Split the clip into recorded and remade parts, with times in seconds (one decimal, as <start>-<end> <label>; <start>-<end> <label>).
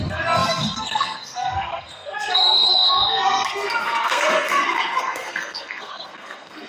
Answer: 0.0-6.7 remade